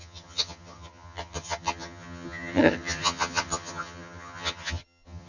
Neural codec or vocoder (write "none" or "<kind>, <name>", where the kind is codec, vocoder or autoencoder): vocoder, HiFi-GAN